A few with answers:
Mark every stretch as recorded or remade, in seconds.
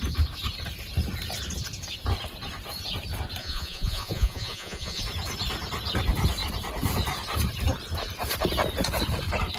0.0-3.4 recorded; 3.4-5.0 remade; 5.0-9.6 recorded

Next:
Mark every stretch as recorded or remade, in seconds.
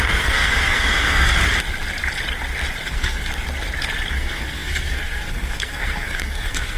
0.0-1.5 remade; 1.5-2.9 recorded; 2.9-3.3 remade; 3.3-4.1 recorded; 4.1-6.8 remade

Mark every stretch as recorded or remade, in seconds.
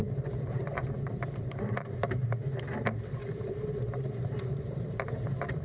0.0-2.8 remade; 2.8-3.2 recorded; 3.2-5.6 remade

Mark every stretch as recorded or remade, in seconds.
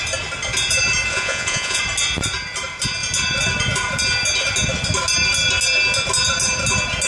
0.0-1.1 recorded; 1.1-1.8 remade; 1.8-7.1 recorded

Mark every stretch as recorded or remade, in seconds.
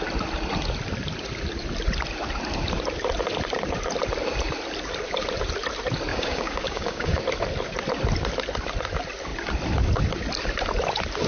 0.0-6.1 recorded; 6.1-7.2 remade; 7.2-11.3 recorded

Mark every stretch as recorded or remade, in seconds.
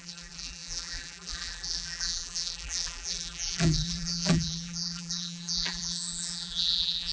0.0-7.1 remade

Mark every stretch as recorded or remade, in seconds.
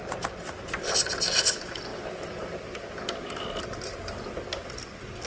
0.0-5.3 recorded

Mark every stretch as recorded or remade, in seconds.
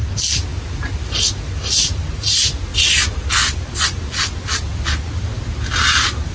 0.0-6.3 recorded